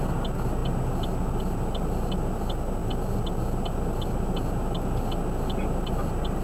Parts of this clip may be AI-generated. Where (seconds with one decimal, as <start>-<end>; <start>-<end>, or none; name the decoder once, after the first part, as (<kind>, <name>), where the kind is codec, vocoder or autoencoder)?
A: none